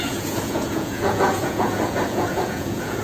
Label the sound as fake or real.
fake